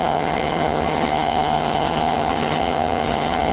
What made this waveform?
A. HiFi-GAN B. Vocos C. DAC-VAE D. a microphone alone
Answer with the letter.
A